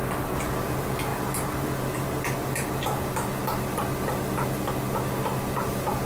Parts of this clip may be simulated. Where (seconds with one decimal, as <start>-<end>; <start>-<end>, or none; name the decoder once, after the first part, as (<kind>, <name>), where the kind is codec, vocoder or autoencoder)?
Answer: none